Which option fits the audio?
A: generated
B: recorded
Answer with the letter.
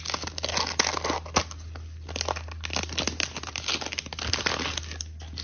B